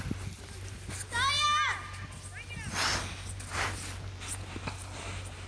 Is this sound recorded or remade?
recorded